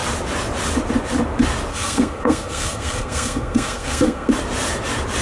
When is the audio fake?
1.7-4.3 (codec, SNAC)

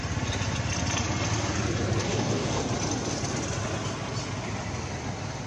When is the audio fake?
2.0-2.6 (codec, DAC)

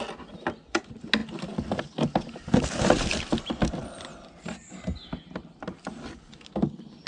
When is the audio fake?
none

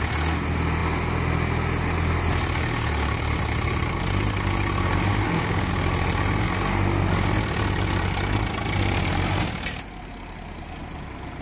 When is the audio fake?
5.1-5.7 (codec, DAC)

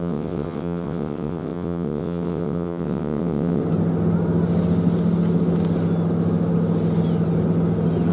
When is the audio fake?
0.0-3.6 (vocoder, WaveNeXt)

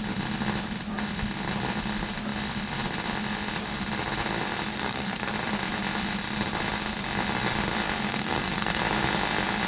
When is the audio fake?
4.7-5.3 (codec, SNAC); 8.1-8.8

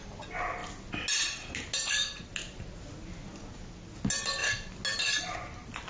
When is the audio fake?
none

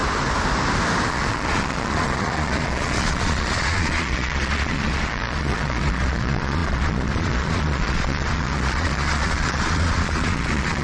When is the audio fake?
1.1-10.8 (vocoder, Vocos)